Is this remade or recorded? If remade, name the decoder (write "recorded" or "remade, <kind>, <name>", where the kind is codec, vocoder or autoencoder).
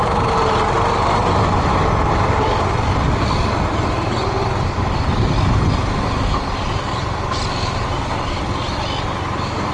recorded